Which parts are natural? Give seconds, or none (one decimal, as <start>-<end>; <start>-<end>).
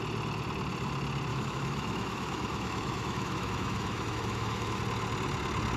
0.0-1.3; 4.8-5.8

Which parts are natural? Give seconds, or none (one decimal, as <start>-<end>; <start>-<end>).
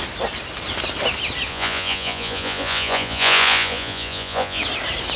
0.0-1.5; 4.6-5.2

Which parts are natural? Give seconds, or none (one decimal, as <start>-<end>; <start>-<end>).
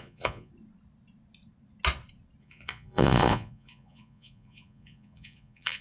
0.5-2.4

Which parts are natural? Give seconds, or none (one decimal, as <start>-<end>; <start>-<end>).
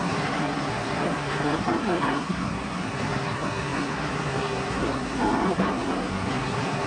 none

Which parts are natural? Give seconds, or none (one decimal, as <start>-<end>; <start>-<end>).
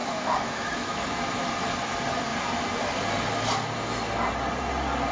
1.2-5.1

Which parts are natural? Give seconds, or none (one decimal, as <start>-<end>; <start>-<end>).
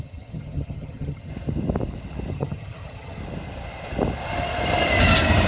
1.3-2.3; 3.2-5.5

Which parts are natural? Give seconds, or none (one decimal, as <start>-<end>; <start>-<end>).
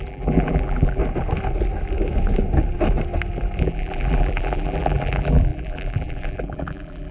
1.0-3.6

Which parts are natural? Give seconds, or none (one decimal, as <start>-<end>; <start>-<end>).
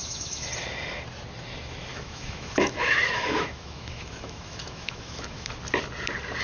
0.5-1.9; 5.5-6.4